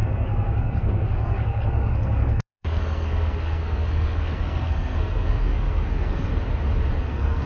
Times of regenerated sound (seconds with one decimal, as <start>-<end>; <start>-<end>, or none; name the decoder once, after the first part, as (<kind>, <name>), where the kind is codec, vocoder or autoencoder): 0.0-6.3 (codec, SNAC); 7.0-7.5